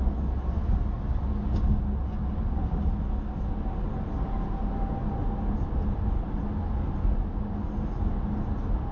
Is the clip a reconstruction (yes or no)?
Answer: no